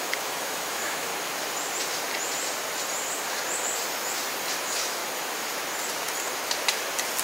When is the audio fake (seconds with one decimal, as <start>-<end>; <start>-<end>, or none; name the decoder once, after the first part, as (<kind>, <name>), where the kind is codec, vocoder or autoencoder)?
0.0-1.1 (autoencoder, DAC-VAE); 4.6-5.0